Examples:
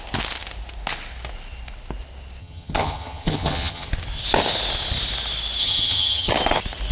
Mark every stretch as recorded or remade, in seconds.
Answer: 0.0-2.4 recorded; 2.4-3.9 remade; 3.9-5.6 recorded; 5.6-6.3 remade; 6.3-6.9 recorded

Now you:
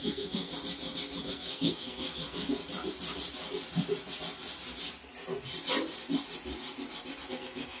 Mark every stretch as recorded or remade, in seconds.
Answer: 0.0-0.5 remade; 0.5-1.2 recorded; 1.2-2.6 remade; 2.6-7.3 recorded; 7.3-7.8 remade